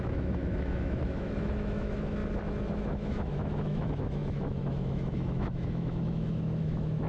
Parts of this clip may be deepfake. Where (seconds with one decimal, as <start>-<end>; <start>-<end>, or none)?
0.0-2.2; 2.7-7.1